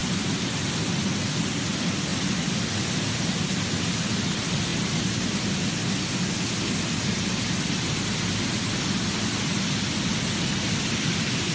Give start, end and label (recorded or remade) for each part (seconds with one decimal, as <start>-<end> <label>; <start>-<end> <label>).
0.0-11.5 recorded